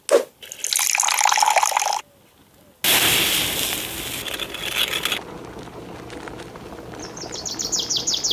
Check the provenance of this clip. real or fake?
real